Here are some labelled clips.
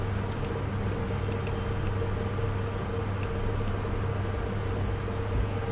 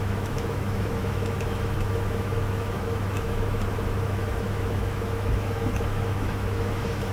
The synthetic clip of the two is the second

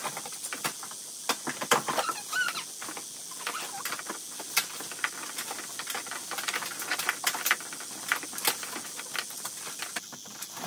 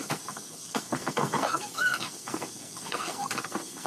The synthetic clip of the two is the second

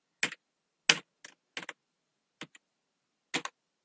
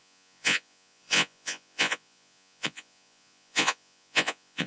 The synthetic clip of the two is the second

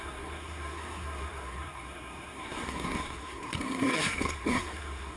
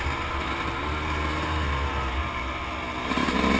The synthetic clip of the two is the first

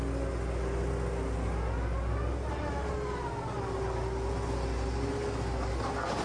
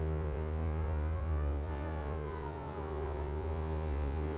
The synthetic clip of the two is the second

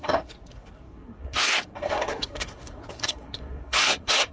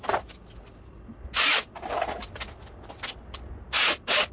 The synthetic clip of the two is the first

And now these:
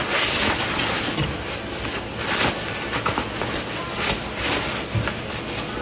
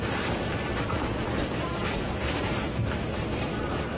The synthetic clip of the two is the second